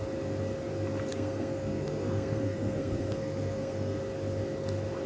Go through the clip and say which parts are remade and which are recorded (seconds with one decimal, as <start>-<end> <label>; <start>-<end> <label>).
0.0-1.1 recorded; 1.1-4.0 remade; 4.0-5.1 recorded